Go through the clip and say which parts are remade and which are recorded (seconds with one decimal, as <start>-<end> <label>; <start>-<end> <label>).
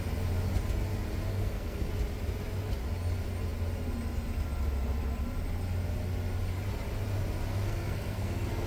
0.0-1.3 recorded; 1.3-1.9 remade; 1.9-7.5 recorded; 7.5-8.7 remade